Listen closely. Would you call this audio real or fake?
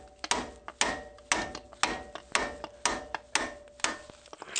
real